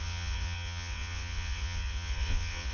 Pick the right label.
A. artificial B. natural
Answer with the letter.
A